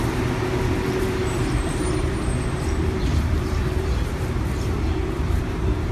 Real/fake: fake